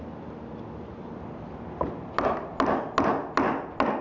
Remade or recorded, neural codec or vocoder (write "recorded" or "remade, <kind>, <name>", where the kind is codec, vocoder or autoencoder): recorded